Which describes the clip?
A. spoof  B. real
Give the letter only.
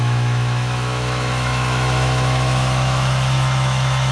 A